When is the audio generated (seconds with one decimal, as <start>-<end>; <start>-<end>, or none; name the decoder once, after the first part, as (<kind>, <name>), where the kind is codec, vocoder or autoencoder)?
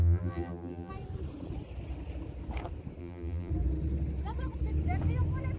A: 0.0-0.9 (vocoder, BigVGAN v2); 3.0-3.5